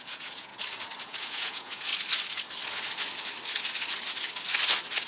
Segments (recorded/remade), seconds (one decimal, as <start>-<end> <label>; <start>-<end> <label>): 0.0-0.5 remade; 0.5-1.0 recorded; 1.0-1.9 remade; 1.9-5.1 recorded